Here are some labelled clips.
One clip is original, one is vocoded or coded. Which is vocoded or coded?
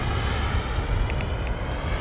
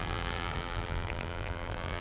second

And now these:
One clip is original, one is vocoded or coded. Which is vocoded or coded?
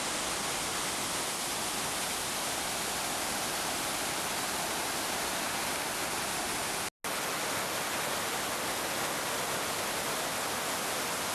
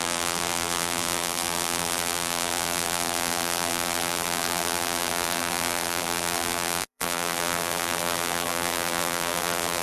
second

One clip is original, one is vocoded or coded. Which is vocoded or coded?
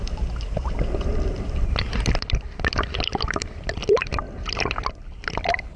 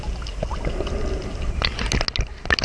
first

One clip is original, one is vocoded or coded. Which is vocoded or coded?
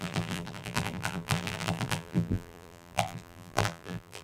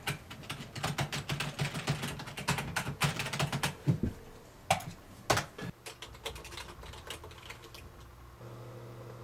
first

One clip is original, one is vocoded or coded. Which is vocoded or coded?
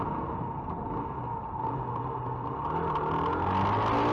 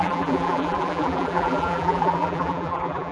second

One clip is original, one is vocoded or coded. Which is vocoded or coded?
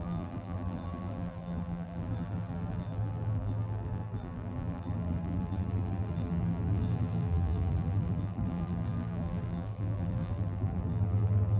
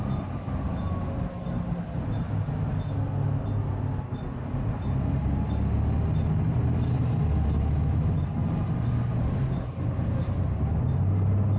first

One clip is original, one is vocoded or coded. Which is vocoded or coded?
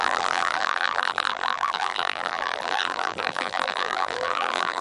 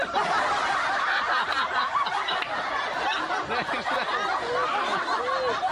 first